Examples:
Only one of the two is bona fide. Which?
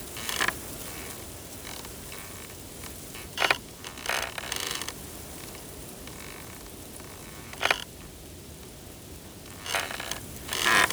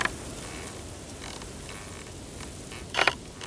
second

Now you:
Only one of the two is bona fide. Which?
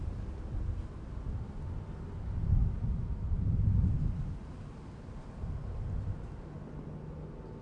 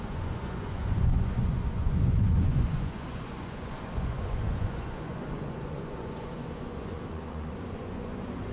first